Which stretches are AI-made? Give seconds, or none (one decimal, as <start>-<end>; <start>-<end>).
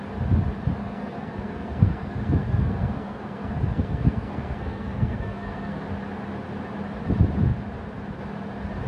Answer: 0.8-5.8